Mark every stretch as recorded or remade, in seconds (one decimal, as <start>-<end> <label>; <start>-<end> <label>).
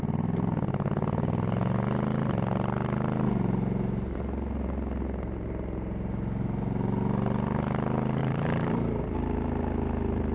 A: 0.0-8.2 recorded; 8.2-9.0 remade; 9.0-10.3 recorded